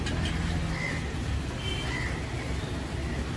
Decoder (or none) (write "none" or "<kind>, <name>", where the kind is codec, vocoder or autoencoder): none